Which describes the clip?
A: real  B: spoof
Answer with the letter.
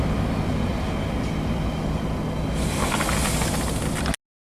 A